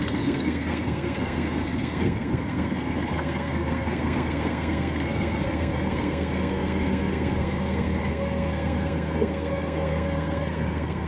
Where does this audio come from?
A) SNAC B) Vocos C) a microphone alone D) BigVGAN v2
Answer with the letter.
A